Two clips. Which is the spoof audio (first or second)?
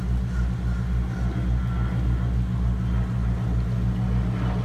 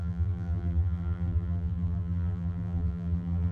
second